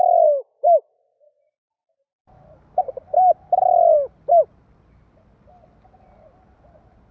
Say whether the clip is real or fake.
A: real